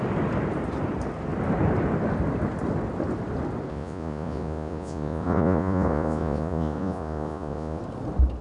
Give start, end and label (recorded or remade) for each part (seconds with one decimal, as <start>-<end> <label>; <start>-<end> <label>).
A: 0.0-3.7 recorded; 3.7-7.8 remade; 7.8-8.4 recorded